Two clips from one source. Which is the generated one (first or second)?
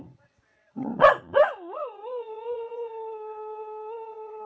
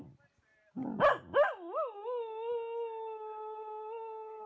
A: first